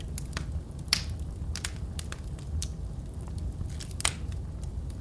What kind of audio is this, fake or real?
real